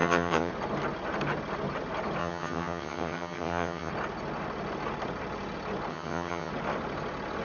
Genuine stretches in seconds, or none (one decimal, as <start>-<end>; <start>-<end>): 0.5-2.2; 3.9-5.9; 6.5-7.4